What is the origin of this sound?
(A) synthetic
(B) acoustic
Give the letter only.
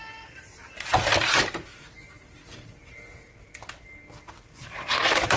B